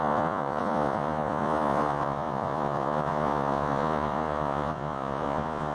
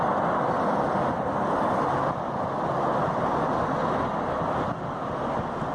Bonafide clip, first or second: second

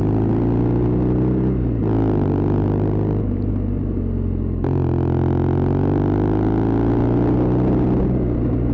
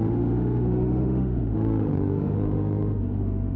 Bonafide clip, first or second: first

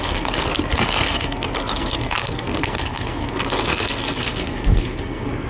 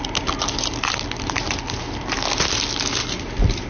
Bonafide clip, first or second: second